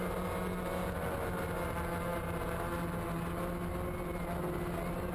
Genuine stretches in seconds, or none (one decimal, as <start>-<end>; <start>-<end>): 0.0-5.1